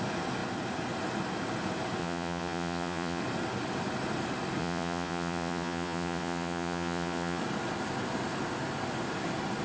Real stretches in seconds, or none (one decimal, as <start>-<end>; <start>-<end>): 0.0-2.0; 3.2-4.6; 7.4-9.6